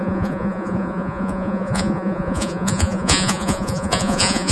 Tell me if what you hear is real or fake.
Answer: fake